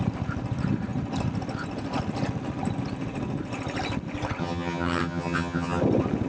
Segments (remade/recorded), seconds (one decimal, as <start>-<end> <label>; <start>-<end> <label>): 0.0-4.4 recorded; 4.4-5.8 remade; 5.8-6.3 recorded